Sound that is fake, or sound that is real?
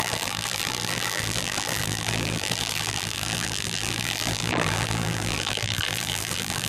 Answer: fake